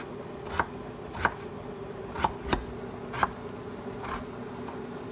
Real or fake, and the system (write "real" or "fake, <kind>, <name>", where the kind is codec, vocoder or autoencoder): real